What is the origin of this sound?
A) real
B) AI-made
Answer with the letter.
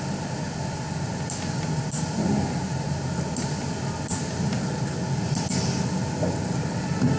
A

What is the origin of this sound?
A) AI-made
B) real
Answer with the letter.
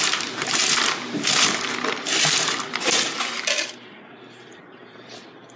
A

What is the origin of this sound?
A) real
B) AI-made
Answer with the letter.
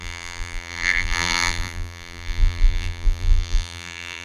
B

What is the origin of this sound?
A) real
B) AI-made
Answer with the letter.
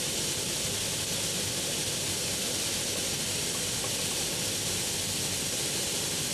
A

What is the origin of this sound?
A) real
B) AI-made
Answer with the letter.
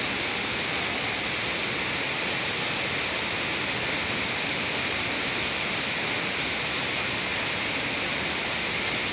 A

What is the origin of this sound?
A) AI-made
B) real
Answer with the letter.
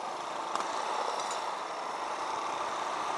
B